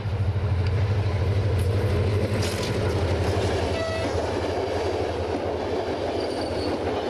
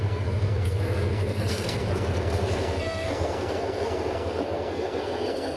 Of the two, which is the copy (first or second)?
second